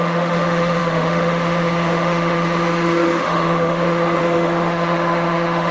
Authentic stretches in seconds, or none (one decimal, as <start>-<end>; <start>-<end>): none